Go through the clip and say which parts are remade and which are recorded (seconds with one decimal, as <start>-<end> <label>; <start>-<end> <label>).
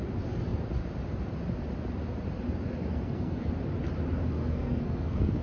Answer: 0.0-2.9 recorded; 2.9-3.5 remade; 3.5-4.2 recorded; 4.2-5.4 remade